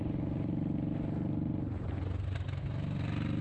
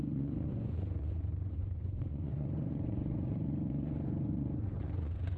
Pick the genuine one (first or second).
first